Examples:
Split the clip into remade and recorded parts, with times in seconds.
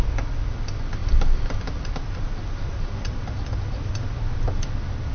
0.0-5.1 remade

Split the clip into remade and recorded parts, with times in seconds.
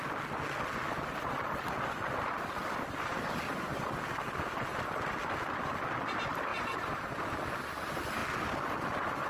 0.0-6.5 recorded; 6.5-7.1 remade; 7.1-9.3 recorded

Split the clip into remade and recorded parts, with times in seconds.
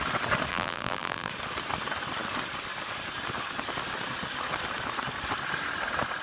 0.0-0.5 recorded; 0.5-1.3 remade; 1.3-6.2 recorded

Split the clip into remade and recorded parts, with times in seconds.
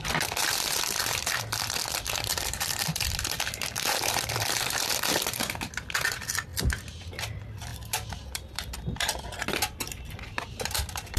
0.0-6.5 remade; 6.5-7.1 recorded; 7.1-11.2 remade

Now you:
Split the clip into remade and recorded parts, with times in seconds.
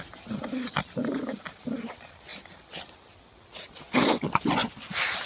0.0-2.3 recorded; 2.3-2.8 remade; 2.8-4.6 recorded; 4.6-5.3 remade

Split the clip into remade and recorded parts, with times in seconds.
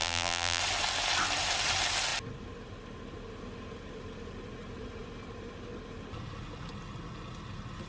0.0-0.6 remade; 0.6-7.9 recorded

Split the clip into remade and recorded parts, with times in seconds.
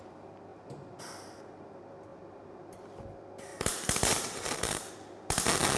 0.0-3.5 recorded; 3.5-4.9 remade; 4.9-5.8 recorded